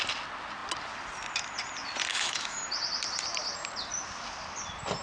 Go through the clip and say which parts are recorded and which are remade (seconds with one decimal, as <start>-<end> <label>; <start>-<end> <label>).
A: 0.0-2.1 recorded; 2.1-2.6 remade; 2.6-5.0 recorded